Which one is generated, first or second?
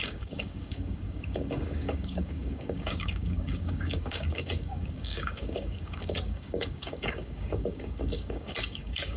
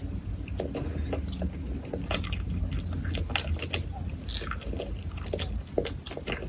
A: first